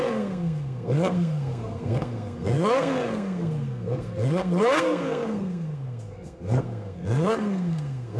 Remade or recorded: remade